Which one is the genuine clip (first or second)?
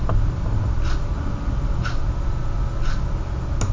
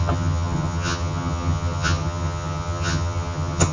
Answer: first